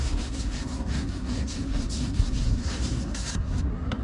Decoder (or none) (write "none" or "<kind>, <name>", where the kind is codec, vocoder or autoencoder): codec, SNAC